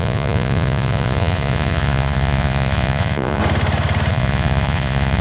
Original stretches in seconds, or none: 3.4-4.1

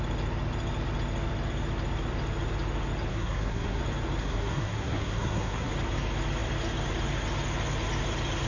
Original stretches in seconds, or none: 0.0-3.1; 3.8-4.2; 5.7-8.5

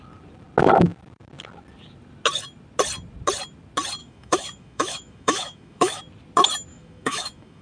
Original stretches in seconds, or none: 0.0-4.0; 6.0-6.7

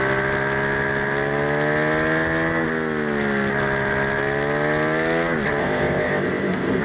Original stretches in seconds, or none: 0.0-5.6

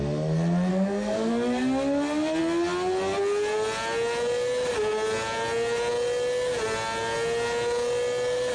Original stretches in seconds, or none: 0.0-0.7; 1.3-8.5

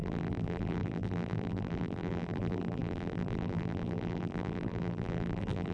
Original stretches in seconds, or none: none